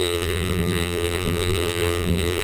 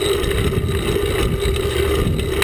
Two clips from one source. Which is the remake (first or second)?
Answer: first